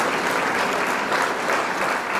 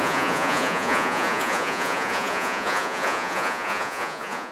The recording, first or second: first